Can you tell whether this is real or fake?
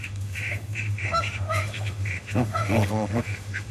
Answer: fake